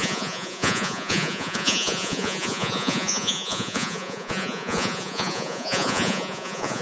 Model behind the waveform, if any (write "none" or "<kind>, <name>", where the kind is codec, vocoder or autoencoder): vocoder, Vocos